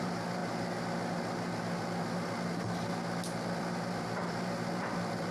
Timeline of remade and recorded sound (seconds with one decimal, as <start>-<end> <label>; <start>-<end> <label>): 0.0-0.4 remade; 0.4-3.6 recorded; 3.6-5.3 remade